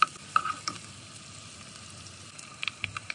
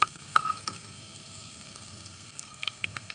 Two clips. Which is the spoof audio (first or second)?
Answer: second